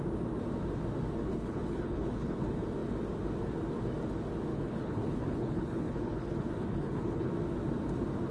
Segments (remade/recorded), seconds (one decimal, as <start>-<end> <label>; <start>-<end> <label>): 0.0-1.3 recorded; 1.3-2.4 remade; 2.4-4.5 recorded; 4.5-7.3 remade; 7.3-8.3 recorded